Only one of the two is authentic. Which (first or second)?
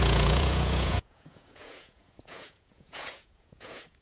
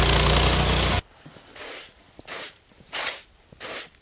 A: second